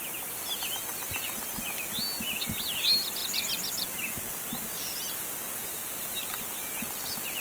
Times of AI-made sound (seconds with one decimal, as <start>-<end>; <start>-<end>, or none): 5.6-6.4